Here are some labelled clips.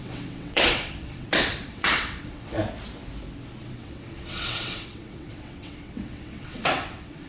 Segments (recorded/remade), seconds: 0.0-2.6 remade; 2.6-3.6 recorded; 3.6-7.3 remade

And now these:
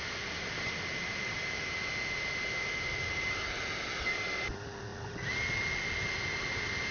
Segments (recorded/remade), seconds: 0.0-6.9 recorded